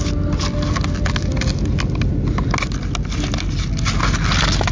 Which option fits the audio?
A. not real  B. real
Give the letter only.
B